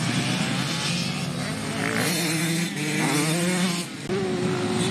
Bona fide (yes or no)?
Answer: yes